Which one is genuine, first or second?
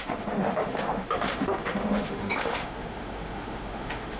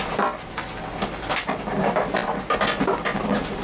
second